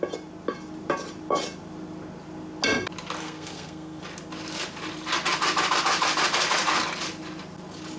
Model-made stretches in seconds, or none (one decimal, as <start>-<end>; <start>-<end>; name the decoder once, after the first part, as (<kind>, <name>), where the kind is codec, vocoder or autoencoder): 3.2-4.0 (codec, SNAC)